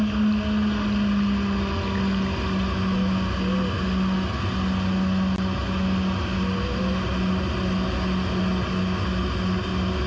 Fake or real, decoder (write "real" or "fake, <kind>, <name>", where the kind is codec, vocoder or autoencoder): real